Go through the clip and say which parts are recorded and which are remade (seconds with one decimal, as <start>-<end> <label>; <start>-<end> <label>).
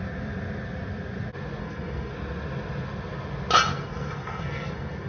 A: 0.0-1.6 recorded; 1.6-2.1 remade; 2.1-3.7 recorded; 3.7-5.1 remade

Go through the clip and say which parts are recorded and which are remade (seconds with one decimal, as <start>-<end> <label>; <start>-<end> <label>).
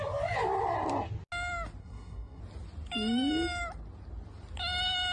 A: 0.0-1.8 recorded; 1.8-2.4 remade; 2.4-5.1 recorded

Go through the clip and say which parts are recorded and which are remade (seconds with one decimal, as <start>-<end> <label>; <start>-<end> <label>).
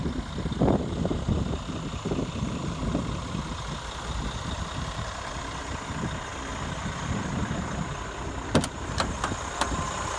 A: 0.0-10.2 recorded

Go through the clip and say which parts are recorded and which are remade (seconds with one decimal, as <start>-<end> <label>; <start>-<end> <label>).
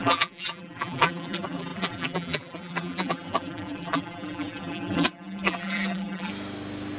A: 0.0-6.3 remade; 6.3-7.0 recorded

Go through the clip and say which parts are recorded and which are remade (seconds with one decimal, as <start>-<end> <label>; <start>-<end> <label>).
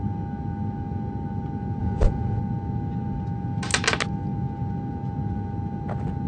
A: 0.0-1.8 recorded; 1.8-2.4 remade; 2.4-6.3 recorded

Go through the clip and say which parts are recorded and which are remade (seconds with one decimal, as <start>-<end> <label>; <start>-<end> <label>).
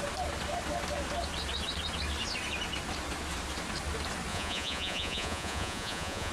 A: 0.0-4.3 recorded; 4.3-6.3 remade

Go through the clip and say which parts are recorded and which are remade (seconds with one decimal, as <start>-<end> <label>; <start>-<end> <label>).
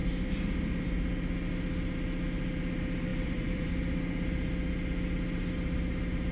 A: 0.0-3.1 recorded; 3.1-3.7 remade; 3.7-6.3 recorded